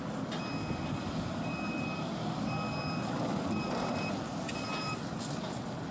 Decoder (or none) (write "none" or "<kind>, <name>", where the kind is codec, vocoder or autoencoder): none